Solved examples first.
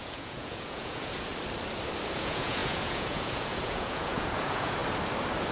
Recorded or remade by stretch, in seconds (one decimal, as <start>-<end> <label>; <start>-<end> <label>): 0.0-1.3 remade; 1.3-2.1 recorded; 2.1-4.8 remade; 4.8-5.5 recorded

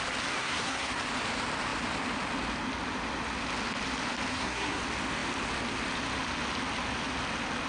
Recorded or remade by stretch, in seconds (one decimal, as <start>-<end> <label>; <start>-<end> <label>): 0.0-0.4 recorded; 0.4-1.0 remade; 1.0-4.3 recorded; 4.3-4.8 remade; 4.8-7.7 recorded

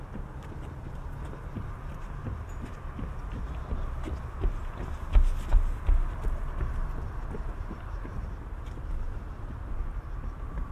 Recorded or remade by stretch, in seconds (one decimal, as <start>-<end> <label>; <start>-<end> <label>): 0.0-10.7 recorded